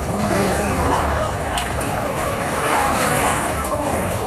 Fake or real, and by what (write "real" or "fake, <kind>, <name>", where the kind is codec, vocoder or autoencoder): fake, codec, DAC